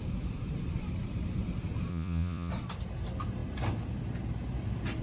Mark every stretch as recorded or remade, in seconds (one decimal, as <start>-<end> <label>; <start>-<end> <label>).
0.0-1.9 recorded; 1.9-2.5 remade; 2.5-5.0 recorded